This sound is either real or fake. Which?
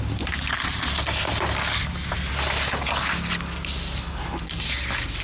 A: real